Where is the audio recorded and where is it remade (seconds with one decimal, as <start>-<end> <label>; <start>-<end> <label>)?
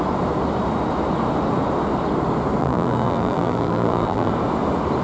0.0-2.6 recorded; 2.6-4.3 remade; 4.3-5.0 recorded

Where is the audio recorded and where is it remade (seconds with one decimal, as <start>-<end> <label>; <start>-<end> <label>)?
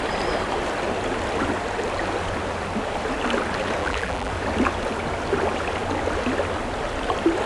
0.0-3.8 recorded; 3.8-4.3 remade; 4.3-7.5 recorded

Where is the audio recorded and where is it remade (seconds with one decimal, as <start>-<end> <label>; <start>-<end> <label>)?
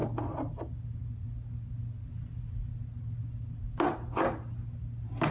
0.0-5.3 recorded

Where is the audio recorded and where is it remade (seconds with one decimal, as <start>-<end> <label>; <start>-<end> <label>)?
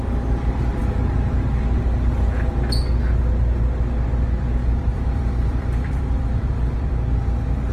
0.0-4.6 recorded; 4.6-6.9 remade; 6.9-7.7 recorded